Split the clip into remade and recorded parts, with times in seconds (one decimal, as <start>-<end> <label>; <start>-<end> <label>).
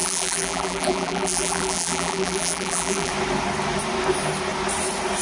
0.0-3.1 remade; 3.1-5.2 recorded